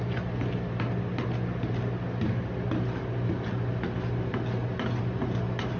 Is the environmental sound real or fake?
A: real